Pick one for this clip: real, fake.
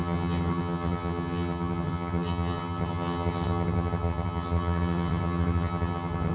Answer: fake